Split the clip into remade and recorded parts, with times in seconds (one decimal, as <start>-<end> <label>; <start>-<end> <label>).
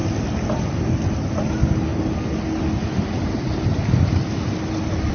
0.0-5.1 recorded